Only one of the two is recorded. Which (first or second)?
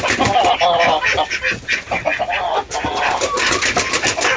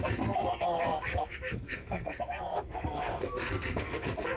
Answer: first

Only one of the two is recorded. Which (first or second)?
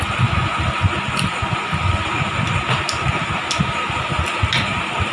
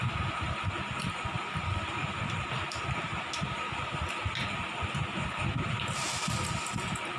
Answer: first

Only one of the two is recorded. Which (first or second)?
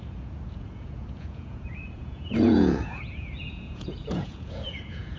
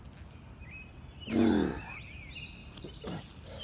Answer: second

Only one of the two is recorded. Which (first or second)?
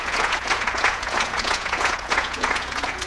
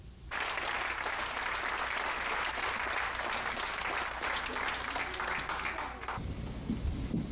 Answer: second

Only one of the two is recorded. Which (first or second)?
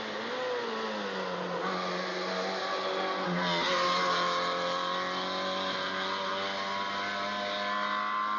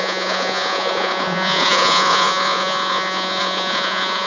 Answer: first